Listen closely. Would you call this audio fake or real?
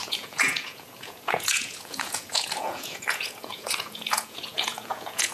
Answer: fake